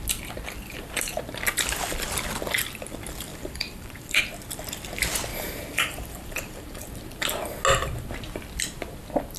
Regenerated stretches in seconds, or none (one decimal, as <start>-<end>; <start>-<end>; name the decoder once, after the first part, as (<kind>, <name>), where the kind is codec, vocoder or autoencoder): 3.3-4.2 (vocoder, BigVGAN v2); 5.3-6.8